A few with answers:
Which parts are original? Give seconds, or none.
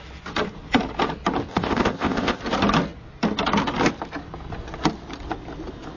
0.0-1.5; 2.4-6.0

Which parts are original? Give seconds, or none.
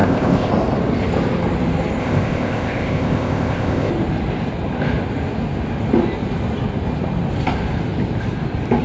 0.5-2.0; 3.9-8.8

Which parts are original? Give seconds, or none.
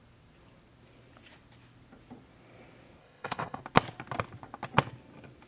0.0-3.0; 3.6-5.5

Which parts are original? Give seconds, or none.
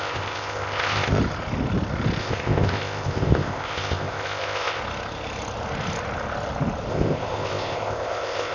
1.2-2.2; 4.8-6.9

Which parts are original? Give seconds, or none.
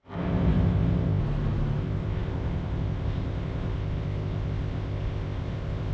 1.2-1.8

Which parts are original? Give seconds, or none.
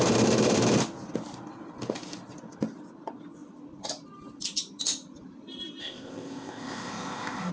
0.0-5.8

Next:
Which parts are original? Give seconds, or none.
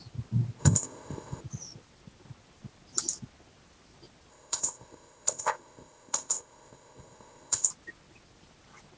0.0-0.6; 1.4-4.3; 7.7-9.0